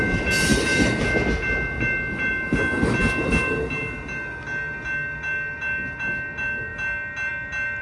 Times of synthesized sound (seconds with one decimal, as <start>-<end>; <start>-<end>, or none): none